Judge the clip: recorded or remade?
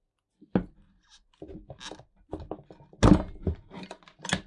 recorded